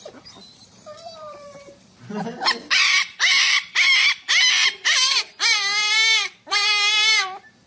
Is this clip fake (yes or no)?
yes